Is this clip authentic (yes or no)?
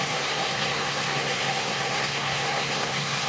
no